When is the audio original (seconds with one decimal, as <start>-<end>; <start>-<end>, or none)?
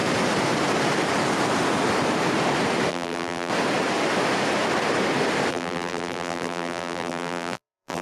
0.0-2.9; 3.5-5.5